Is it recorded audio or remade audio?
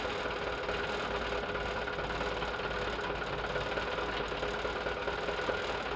recorded